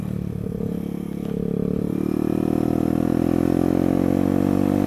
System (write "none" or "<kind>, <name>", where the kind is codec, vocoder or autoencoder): none